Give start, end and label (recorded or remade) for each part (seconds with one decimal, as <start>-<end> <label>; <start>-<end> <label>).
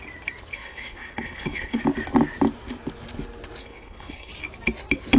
0.0-0.5 recorded; 0.5-1.8 remade; 1.8-3.6 recorded; 3.6-4.3 remade; 4.3-5.2 recorded